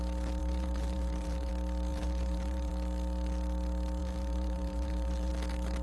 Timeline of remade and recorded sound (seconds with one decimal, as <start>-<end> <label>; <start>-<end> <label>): 0.0-0.4 recorded; 0.4-1.5 remade; 1.5-1.9 recorded; 1.9-2.7 remade; 2.7-4.0 recorded; 4.0-5.3 remade; 5.3-5.8 recorded